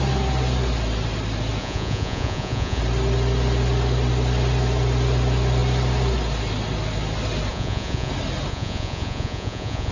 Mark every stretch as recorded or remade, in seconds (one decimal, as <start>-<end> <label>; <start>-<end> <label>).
0.0-1.6 recorded; 1.6-2.8 remade; 2.8-7.5 recorded; 7.5-8.1 remade; 8.1-8.5 recorded; 8.5-9.9 remade